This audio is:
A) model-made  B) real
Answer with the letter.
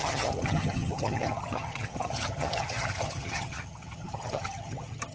A